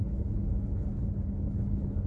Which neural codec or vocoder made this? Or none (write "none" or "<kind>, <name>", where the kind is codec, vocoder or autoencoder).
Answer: codec, HILCodec